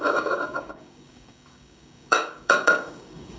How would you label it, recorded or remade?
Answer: remade